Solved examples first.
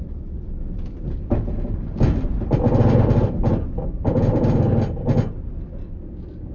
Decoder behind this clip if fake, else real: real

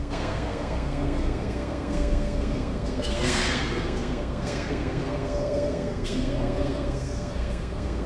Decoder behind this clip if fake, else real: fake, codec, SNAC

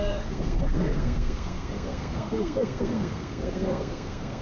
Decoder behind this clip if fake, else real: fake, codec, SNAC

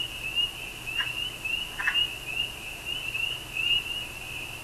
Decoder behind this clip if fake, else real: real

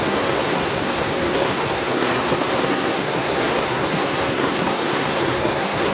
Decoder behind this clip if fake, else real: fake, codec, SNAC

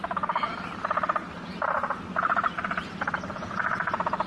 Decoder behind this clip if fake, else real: real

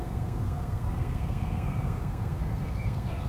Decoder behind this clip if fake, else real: fake, codec, SNAC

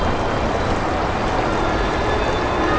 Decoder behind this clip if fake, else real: real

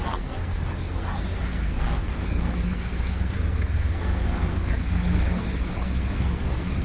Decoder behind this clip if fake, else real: fake, codec, SNAC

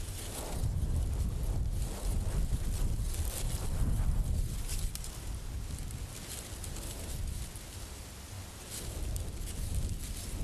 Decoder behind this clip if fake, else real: real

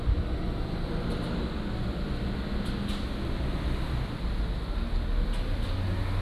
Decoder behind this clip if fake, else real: real